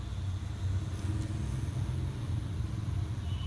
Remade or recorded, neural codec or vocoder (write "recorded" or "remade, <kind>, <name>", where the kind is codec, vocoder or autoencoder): recorded